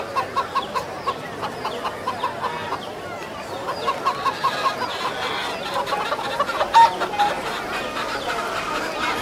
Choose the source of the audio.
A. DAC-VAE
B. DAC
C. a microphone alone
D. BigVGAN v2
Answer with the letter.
C